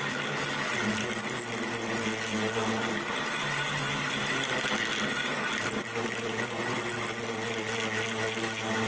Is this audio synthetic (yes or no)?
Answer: no